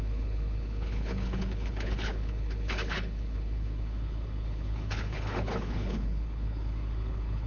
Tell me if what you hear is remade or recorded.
remade